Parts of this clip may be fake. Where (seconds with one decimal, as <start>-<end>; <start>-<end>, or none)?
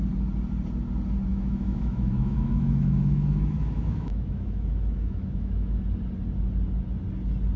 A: 1.3-5.8